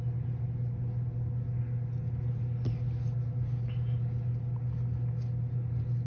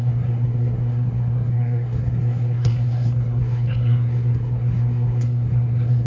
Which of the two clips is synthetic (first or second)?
second